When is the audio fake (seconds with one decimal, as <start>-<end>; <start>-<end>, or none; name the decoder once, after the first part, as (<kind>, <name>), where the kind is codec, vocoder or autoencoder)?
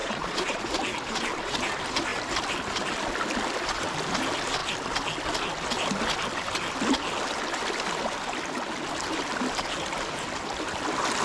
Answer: 0.0-0.6 (vocoder, Vocos)